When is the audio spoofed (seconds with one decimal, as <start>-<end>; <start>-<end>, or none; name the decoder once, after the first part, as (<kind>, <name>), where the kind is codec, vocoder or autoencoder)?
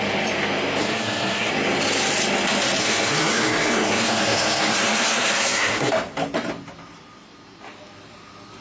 0.8-1.5 (codec, SNAC); 2.8-5.9